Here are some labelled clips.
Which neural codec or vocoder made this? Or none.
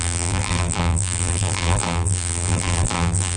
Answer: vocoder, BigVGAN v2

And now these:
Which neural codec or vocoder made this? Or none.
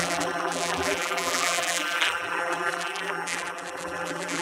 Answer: vocoder, BigVGAN v2